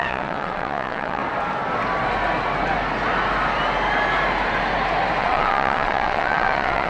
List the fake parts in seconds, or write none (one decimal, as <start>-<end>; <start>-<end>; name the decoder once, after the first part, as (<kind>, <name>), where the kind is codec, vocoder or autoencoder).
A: 0.0-1.2 (vocoder, WaveNeXt); 5.2-6.9